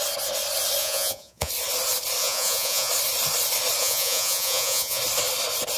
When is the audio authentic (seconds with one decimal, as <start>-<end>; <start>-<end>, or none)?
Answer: 0.0-0.8; 1.5-2.2; 2.9-3.8; 5.0-5.8